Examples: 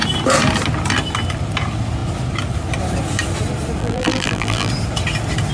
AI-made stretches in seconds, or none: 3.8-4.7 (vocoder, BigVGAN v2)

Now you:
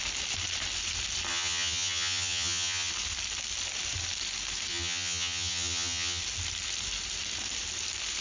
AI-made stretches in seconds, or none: 1.3-2.9 (vocoder, HiFi-GAN); 4.7-6.2

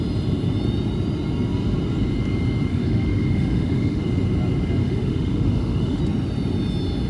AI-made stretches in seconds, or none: 2.7-4.0 (autoencoder, DAC-VAE); 4.8-6.0

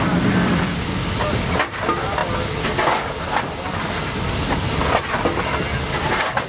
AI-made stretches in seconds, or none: none

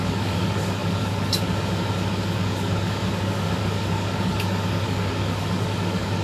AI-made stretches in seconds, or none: 0.0-6.2 (codec, DAC)

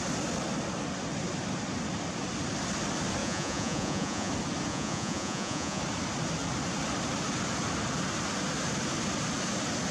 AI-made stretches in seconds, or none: 3.2-4.3 (vocoder, Vocos); 4.7-5.8

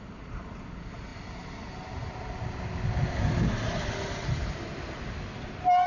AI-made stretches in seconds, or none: none

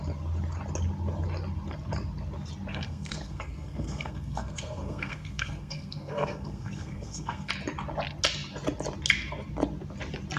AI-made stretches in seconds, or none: 2.7-7.5 (codec, SNAC)